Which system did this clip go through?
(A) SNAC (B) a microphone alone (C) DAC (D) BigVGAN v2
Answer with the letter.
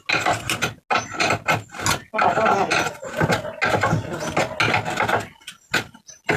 B